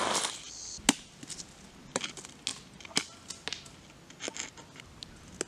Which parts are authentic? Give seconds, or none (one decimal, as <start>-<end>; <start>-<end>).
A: 0.0-5.5